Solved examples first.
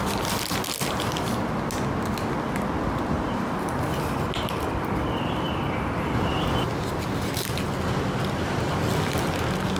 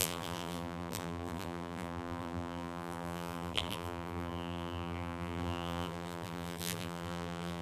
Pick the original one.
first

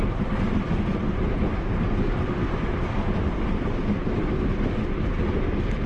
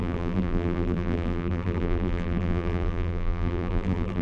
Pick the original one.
first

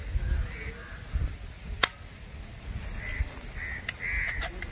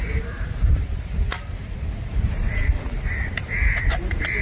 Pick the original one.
first